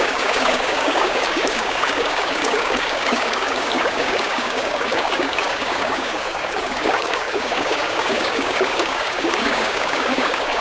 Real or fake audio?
fake